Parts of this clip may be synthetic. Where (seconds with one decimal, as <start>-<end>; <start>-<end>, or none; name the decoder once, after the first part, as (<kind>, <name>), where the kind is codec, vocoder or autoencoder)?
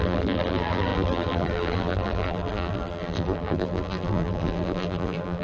0.0-5.4 (vocoder, BigVGAN v2)